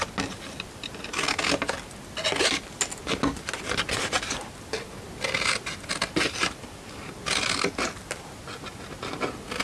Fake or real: real